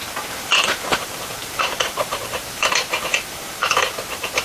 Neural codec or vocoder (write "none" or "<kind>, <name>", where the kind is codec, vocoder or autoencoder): vocoder, BigVGAN v2